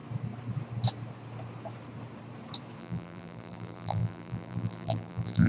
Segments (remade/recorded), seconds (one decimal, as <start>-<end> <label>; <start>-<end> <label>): 0.0-2.8 recorded; 2.8-5.5 remade